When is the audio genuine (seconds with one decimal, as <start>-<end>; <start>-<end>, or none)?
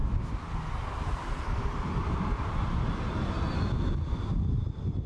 0.0-5.1